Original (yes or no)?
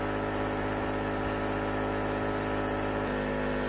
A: yes